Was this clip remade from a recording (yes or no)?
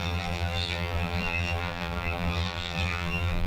yes